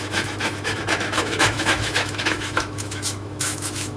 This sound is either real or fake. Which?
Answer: fake